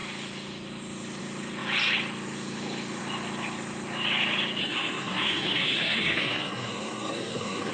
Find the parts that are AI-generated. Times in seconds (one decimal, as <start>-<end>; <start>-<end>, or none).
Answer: 4.6-7.7